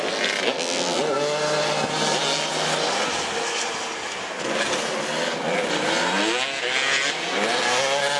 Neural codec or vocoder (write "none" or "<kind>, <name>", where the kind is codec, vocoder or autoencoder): none